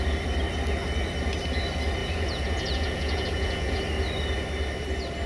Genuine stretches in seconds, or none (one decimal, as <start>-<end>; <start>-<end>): 0.0-2.0; 3.8-5.3